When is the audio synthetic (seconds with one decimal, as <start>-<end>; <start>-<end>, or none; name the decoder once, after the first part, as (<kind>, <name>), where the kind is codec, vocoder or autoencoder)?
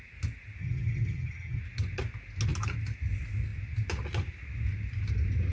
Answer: 0.6-1.6 (vocoder, HiFi-GAN)